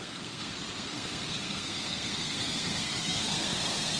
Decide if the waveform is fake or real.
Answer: fake